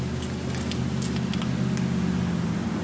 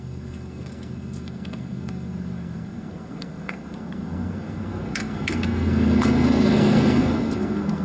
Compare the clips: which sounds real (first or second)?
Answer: first